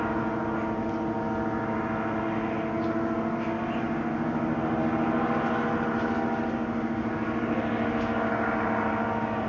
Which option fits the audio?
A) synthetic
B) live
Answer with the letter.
B